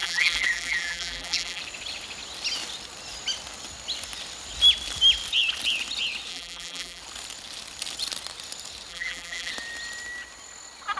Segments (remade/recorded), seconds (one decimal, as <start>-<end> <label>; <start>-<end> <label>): 0.0-1.6 remade; 1.6-6.3 recorded; 6.3-7.0 remade; 7.0-8.9 recorded; 8.9-9.5 remade; 9.5-11.0 recorded